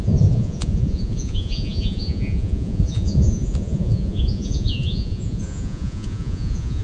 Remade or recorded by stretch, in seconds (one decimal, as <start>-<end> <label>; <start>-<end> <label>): 0.0-6.8 remade